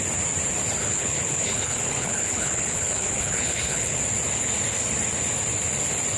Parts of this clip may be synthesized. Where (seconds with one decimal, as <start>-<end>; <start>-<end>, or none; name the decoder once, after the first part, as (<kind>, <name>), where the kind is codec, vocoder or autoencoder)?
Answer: 0.8-4.0 (codec, HILCodec)